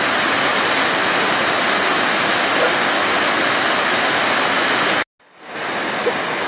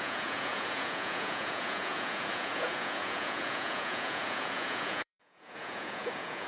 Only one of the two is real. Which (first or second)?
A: first